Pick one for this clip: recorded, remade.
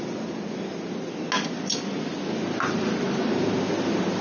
recorded